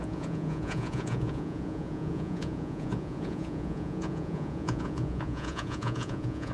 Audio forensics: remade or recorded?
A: remade